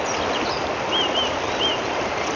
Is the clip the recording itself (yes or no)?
yes